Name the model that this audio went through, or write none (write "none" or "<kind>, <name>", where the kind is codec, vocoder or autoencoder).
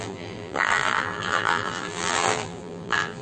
vocoder, BigVGAN v2